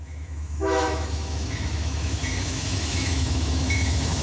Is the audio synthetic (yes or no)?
yes